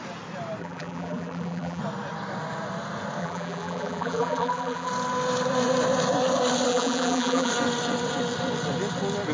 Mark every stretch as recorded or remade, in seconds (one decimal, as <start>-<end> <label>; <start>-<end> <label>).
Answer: 0.0-0.6 recorded; 0.6-1.8 remade; 1.8-3.2 recorded; 3.2-4.9 remade; 4.9-6.7 recorded; 6.7-7.5 remade; 7.5-9.3 recorded